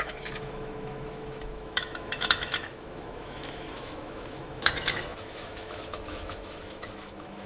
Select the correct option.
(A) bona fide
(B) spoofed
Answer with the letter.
B